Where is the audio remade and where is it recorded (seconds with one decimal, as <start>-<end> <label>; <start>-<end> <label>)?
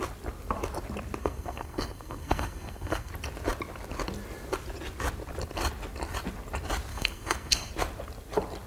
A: 0.0-1.2 recorded; 1.2-3.1 remade; 3.1-6.9 recorded; 6.9-7.7 remade; 7.7-8.7 recorded